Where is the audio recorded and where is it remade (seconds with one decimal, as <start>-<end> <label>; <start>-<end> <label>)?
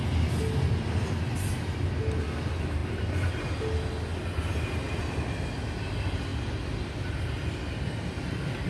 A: 0.0-8.7 recorded